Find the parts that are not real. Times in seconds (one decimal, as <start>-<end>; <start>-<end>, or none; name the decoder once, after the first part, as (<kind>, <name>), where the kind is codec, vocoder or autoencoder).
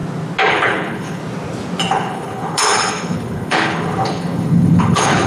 0.5-1.2 (codec, HILCodec); 1.9-5.3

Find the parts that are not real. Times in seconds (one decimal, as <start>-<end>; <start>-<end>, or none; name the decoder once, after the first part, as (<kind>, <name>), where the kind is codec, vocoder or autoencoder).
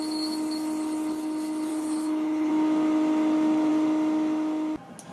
1.7-2.5 (codec, HILCodec)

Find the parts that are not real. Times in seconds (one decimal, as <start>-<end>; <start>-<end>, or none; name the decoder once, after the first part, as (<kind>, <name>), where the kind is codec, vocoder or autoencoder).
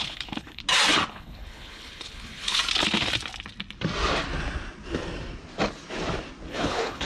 0.0-0.6 (codec, HILCodec); 1.1-2.6; 6.5-7.0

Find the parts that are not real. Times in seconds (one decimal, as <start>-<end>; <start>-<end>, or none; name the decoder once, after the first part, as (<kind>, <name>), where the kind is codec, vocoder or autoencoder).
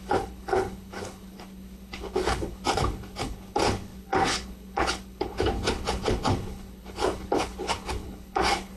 0.0-8.8 (codec, HILCodec)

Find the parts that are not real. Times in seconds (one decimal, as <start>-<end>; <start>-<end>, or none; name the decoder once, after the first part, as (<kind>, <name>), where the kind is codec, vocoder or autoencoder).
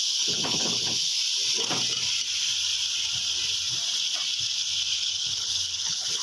0.0-1.2 (codec, HILCodec); 4.9-6.2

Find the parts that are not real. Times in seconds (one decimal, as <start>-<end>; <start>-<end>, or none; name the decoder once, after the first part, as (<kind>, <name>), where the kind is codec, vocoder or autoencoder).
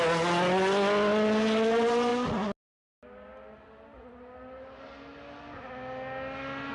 none